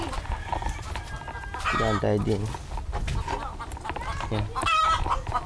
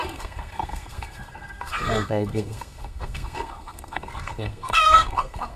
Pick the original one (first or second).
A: first